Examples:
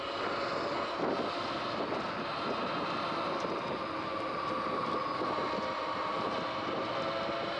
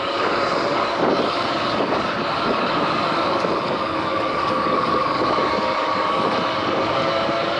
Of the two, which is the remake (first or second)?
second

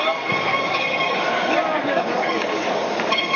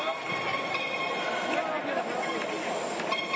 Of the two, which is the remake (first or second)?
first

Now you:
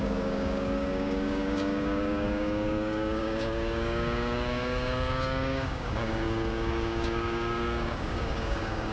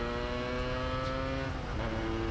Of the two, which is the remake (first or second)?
first